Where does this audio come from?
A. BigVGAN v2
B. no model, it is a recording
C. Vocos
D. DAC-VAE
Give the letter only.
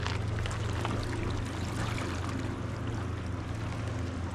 B